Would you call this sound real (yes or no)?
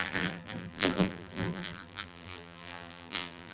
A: no